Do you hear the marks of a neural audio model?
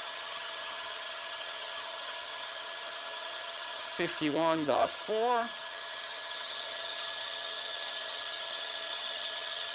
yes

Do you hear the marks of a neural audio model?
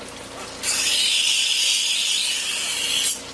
no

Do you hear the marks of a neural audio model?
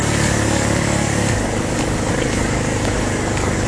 yes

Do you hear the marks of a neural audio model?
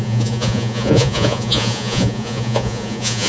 yes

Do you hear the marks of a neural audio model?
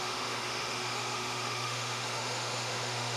yes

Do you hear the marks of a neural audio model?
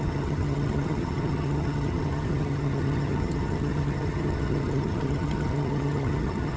yes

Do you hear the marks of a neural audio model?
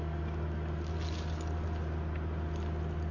no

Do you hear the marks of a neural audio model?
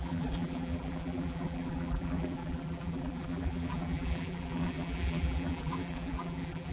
yes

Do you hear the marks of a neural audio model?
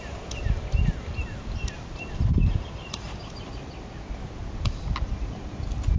no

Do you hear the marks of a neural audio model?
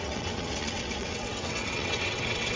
yes